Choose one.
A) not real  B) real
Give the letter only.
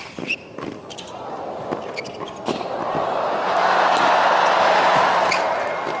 B